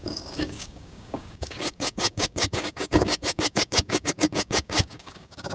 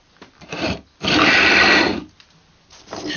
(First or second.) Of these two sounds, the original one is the second